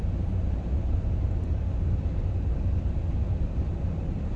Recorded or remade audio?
recorded